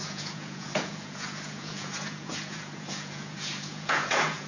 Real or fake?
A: fake